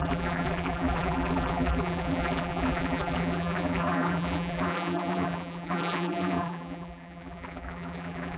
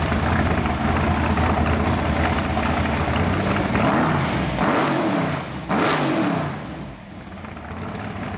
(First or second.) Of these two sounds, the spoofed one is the first